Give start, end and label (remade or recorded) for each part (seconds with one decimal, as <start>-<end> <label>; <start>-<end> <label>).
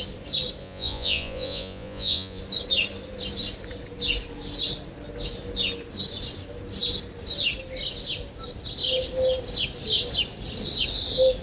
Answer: 0.0-0.6 recorded; 0.6-2.4 remade; 2.4-11.4 recorded